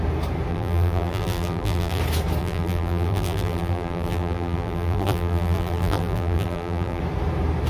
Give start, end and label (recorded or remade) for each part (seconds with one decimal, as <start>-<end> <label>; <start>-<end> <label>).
0.0-0.5 recorded; 0.5-2.0 remade; 2.0-2.4 recorded; 2.4-7.0 remade; 7.0-7.7 recorded